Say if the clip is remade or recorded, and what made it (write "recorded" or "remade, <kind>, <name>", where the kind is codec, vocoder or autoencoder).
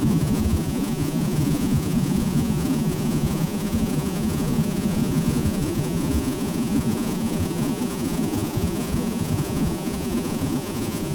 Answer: remade, vocoder, Vocos